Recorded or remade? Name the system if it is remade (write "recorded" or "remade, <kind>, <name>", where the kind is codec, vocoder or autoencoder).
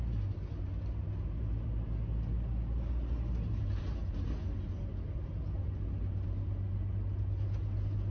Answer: recorded